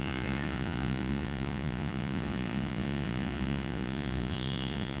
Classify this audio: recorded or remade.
remade